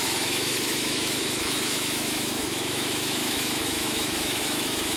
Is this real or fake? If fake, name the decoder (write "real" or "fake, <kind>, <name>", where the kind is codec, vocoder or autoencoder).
fake, autoencoder, DAC-VAE